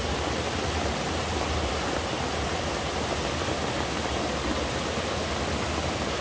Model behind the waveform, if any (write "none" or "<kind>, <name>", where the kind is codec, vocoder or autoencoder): none